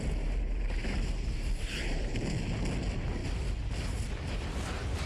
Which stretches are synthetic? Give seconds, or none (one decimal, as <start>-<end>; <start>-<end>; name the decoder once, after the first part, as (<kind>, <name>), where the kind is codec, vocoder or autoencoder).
none